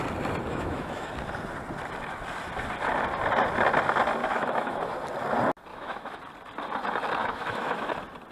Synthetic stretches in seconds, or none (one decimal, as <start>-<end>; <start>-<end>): 0.5-1.1; 4.2-4.8; 5.7-6.2; 7.2-7.9